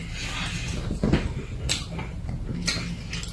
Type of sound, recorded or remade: recorded